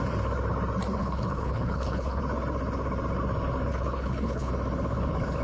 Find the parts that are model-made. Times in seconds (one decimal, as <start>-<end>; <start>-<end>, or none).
1.0-2.2; 3.7-4.5